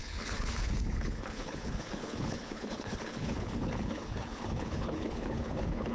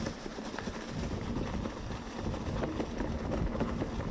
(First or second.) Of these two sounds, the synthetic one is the first